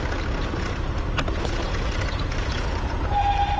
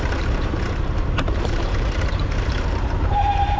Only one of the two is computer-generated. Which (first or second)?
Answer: second